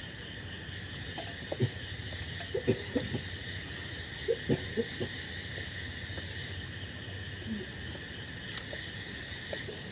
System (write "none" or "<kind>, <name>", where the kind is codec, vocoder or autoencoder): none